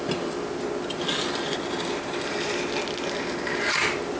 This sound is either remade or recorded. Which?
recorded